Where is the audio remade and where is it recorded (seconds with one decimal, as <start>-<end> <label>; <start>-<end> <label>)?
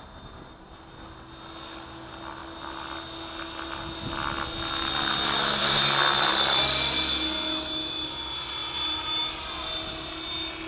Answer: 0.0-10.7 recorded